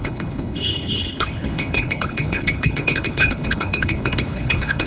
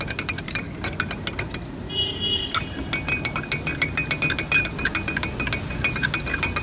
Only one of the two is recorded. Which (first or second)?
second